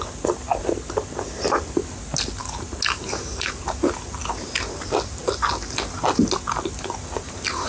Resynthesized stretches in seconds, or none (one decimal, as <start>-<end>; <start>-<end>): none

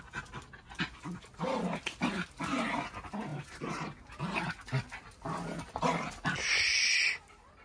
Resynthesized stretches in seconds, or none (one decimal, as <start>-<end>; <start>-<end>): none

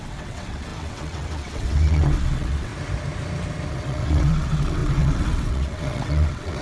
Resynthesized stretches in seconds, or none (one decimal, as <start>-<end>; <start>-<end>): 0.0-2.7; 3.7-6.6

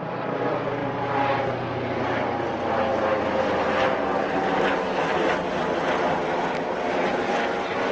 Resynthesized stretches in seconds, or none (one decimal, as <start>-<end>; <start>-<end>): none

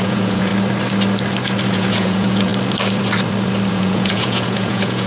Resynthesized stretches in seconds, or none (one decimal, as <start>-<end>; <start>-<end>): 0.0-0.5; 1.7-2.5; 3.7-5.1